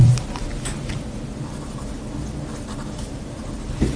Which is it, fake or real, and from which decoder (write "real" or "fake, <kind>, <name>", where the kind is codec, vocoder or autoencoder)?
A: fake, vocoder, BigVGAN v2